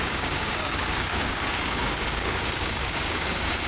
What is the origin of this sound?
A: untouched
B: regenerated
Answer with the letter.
B